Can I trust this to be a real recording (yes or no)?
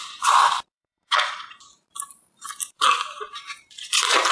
no